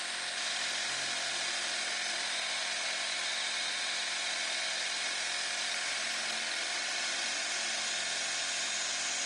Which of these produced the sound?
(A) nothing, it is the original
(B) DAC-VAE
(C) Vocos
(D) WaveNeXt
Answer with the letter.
A